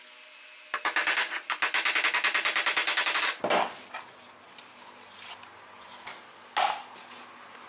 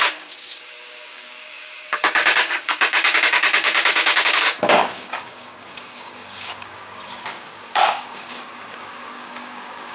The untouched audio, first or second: first